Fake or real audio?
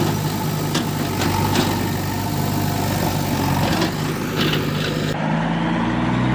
real